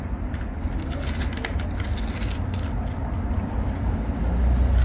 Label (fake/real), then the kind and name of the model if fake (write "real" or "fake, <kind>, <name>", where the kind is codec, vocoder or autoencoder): real